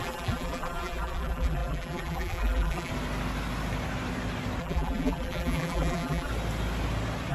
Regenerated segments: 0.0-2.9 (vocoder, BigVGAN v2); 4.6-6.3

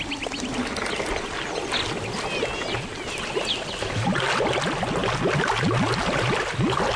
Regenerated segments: none

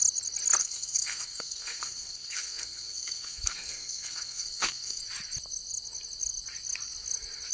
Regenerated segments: 0.6-5.0 (codec, SNAC)

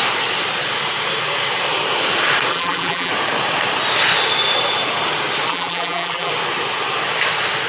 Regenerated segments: 2.5-3.1 (vocoder, BigVGAN v2); 5.5-6.3

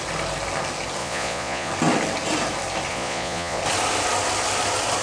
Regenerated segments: 1.0-1.7 (vocoder, Vocos); 2.9-3.6

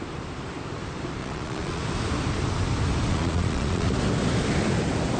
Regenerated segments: 1.2-1.8 (vocoder, Vocos); 3.1-3.9

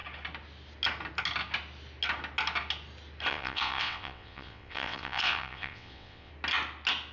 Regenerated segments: 3.3-6.3 (vocoder, WaveNeXt)

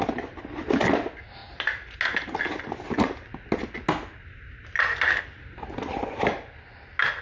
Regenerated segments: none